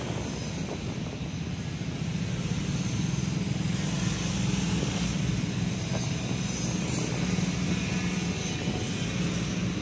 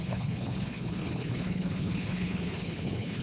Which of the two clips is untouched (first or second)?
first